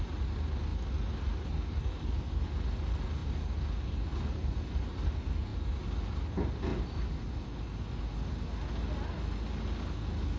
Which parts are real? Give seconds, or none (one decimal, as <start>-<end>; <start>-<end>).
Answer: 0.0-10.4